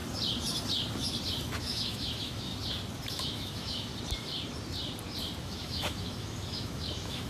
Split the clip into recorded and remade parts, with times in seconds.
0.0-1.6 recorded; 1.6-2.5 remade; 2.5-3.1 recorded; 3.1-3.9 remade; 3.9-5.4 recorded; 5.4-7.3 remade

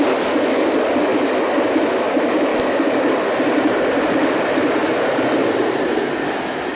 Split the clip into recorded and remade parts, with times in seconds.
0.0-6.8 recorded

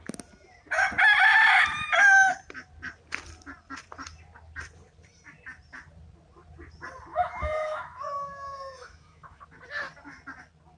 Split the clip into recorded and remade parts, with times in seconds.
0.0-7.1 recorded; 7.1-9.4 remade; 9.4-10.8 recorded

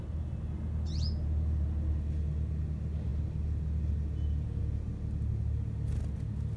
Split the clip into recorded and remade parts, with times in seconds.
0.0-6.6 recorded

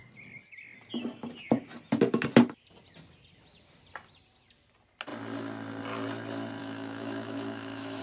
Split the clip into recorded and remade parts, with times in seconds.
0.0-6.6 recorded; 6.6-8.0 remade